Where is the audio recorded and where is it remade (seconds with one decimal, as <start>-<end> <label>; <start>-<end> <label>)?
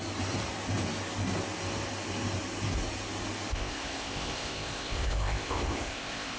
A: 0.0-3.5 recorded; 3.5-6.4 remade